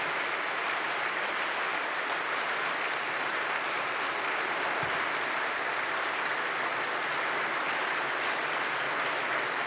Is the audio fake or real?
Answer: real